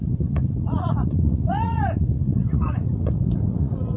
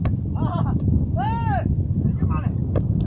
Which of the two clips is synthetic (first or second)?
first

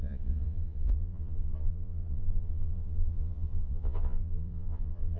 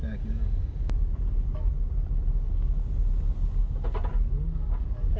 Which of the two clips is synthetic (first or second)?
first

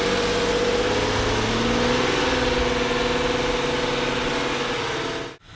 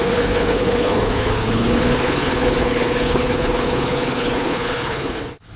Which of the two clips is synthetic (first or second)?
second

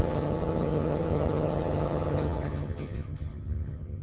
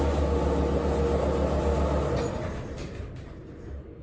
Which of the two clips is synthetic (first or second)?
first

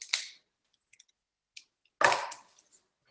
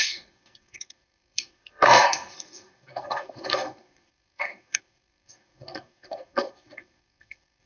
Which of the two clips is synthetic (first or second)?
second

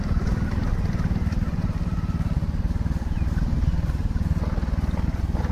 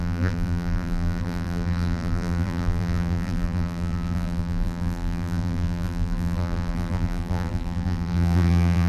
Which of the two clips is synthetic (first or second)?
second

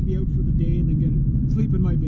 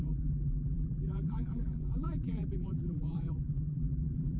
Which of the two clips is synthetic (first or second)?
second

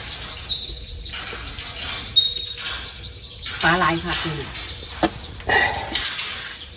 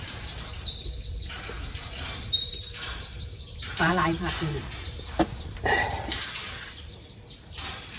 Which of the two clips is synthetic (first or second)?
second